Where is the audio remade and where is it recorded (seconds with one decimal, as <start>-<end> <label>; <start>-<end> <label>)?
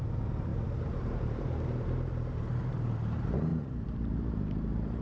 0.0-5.0 remade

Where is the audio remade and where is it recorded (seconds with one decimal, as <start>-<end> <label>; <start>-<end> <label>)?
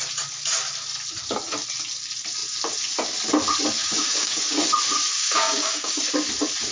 0.0-3.8 recorded; 3.8-4.6 remade; 4.6-5.1 recorded; 5.1-6.1 remade; 6.1-6.7 recorded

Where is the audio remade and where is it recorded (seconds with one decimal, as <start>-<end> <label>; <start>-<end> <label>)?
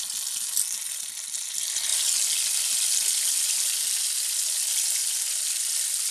0.0-6.1 recorded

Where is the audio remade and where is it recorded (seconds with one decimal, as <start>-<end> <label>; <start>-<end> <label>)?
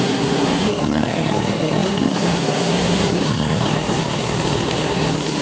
0.0-5.4 remade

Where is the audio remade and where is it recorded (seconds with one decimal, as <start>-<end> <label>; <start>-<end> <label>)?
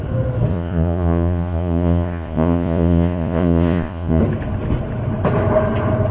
0.0-0.5 recorded; 0.5-4.2 remade; 4.2-6.1 recorded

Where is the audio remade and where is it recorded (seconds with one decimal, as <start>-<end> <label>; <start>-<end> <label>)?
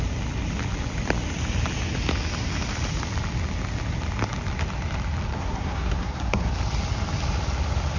0.0-5.3 recorded; 5.3-6.5 remade; 6.5-8.0 recorded